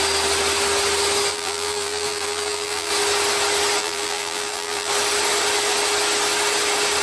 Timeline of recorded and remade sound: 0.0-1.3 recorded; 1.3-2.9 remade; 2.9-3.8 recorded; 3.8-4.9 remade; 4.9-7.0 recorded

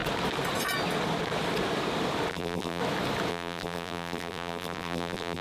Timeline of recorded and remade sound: 0.0-2.3 recorded; 2.3-2.8 remade; 2.8-3.3 recorded; 3.3-5.4 remade

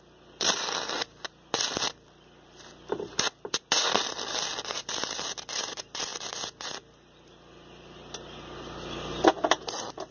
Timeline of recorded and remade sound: 0.0-10.1 recorded

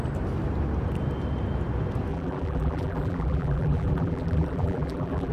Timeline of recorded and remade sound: 0.0-2.1 recorded; 2.1-5.3 remade

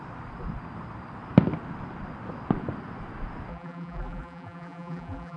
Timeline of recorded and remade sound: 0.0-3.5 recorded; 3.5-5.4 remade

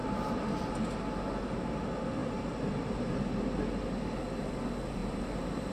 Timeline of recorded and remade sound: 0.0-0.8 remade; 0.8-2.2 recorded; 2.2-3.2 remade; 3.2-5.0 recorded; 5.0-5.7 remade